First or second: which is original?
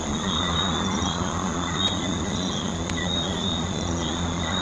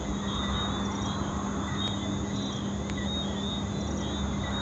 second